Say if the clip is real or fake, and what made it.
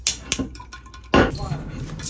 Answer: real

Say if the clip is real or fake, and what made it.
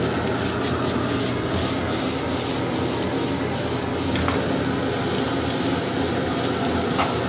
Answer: real